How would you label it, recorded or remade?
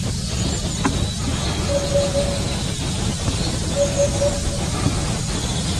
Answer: recorded